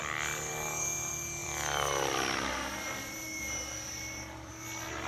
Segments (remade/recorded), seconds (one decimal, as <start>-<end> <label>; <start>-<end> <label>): 0.0-1.4 recorded; 1.4-4.5 remade; 4.5-5.1 recorded